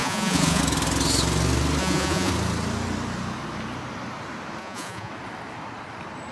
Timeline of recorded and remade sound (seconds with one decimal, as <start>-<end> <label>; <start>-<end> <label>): 0.0-0.6 remade; 0.6-1.8 recorded; 1.8-2.3 remade; 2.3-4.6 recorded; 4.6-5.1 remade; 5.1-6.3 recorded